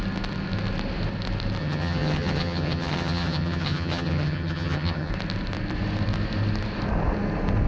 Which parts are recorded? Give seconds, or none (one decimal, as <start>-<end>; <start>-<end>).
0.0-1.6; 5.1-7.7